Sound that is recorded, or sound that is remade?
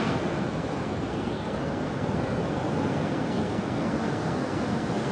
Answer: remade